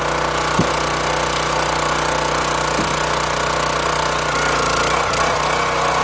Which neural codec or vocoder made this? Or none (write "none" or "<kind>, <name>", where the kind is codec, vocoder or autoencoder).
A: none